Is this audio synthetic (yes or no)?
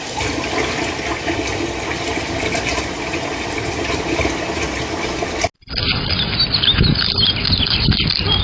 no